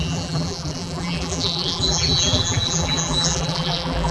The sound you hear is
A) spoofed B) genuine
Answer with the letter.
A